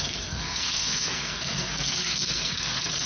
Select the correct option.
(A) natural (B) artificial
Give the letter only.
B